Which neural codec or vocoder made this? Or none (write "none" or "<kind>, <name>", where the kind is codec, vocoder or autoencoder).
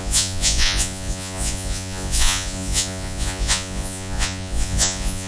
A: vocoder, Vocos